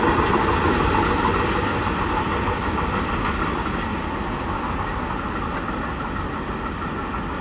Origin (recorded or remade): recorded